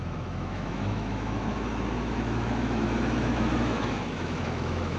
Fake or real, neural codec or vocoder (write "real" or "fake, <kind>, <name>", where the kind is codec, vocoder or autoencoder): fake, autoencoder, DAC-VAE